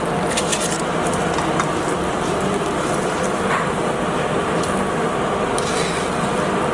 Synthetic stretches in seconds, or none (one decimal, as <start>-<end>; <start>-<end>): none